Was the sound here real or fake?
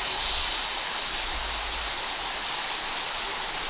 real